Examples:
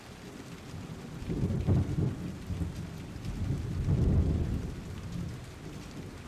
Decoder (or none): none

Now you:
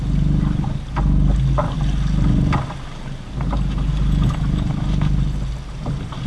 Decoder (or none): none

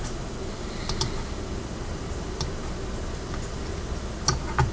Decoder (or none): none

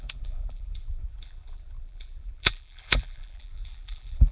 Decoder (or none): vocoder, BigVGAN v2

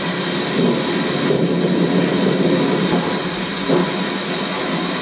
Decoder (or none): none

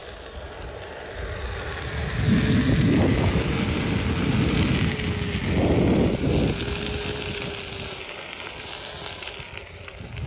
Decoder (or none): none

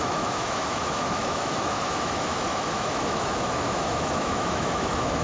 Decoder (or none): autoencoder, DAC-VAE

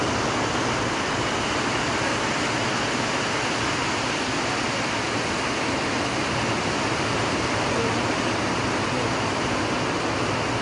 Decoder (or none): none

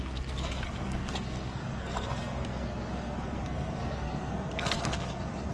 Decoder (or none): codec, SNAC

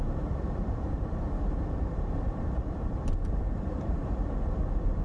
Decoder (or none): vocoder, BigVGAN v2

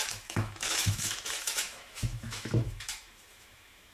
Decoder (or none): autoencoder, DAC-VAE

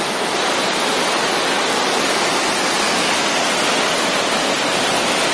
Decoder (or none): none